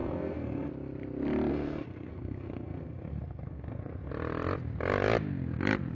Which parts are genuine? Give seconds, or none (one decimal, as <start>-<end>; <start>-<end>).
0.7-1.5; 4.1-5.9

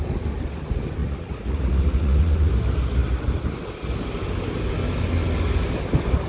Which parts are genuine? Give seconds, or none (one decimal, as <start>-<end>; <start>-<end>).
0.0-1.0; 2.5-6.3

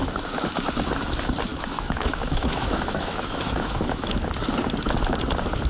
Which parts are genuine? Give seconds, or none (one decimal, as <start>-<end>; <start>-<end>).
0.0-1.5; 4.1-5.7

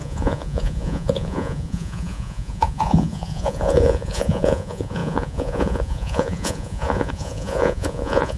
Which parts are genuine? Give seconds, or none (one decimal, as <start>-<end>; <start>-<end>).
none

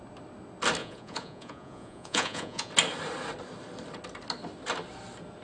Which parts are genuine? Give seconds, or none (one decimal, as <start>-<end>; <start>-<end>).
0.0-0.8; 2.7-5.4

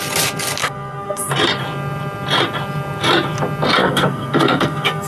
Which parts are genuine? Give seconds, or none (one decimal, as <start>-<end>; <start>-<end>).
0.0-0.6; 1.3-3.8

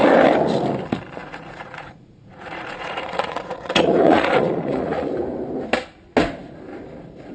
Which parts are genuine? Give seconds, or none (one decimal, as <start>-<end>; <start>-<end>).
0.0-1.2; 5.1-7.3

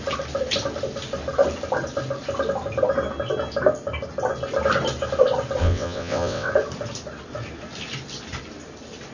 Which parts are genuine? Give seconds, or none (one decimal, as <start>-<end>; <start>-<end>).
0.0-5.6; 6.5-9.1